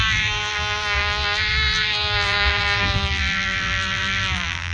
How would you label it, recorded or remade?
remade